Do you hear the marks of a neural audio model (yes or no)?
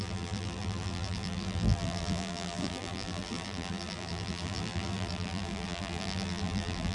yes